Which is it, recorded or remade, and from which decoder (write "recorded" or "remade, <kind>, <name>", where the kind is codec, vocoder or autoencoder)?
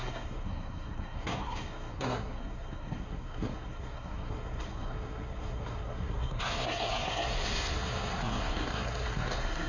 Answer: remade, codec, SNAC